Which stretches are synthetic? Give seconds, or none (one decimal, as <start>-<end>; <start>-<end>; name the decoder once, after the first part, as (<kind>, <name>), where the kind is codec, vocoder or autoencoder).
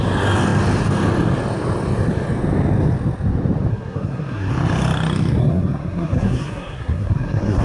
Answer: 3.7-4.5 (codec, SNAC); 5.4-7.6